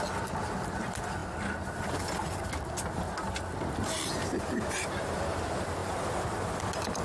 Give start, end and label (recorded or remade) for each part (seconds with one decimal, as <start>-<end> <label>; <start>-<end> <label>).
0.0-4.2 recorded; 4.2-5.2 remade; 5.2-5.8 recorded; 5.8-6.6 remade; 6.6-7.0 recorded